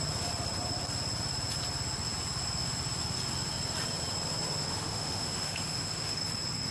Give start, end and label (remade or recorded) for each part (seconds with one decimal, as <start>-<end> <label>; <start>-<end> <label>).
0.0-4.7 recorded; 4.7-6.2 remade; 6.2-6.7 recorded